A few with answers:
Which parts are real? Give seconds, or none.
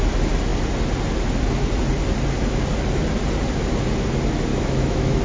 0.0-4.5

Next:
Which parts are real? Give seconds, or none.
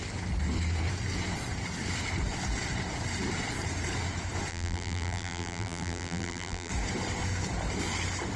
0.0-4.5; 6.7-8.4